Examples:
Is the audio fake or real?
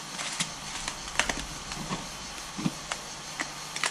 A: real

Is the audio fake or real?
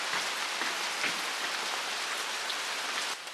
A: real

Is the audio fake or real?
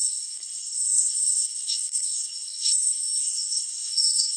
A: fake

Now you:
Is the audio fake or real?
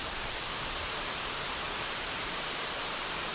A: fake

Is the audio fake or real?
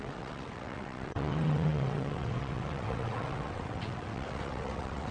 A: fake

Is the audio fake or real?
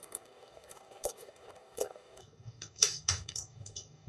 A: fake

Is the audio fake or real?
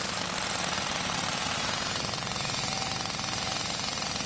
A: real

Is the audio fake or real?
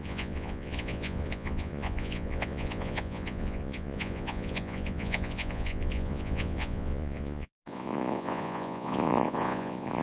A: fake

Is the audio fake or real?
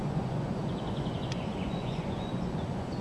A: fake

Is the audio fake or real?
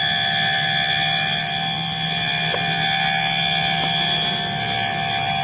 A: real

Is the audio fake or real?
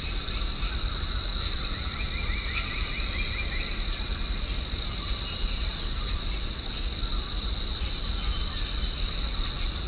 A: real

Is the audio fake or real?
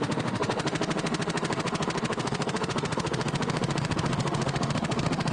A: fake